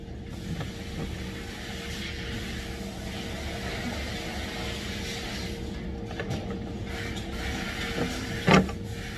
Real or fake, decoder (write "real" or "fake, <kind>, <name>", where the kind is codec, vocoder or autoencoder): real